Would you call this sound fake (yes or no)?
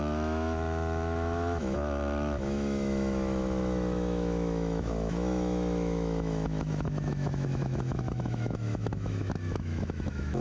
yes